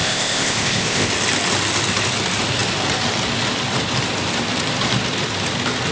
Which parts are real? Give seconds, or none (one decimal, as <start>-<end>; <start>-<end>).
1.1-5.9